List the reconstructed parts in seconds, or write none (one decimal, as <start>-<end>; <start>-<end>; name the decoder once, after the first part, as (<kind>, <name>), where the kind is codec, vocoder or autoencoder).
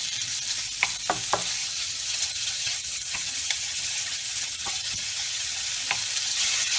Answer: 1.6-5.7 (vocoder, HiFi-GAN); 6.3-6.8